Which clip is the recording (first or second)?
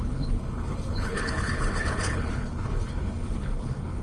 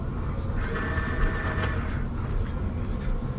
second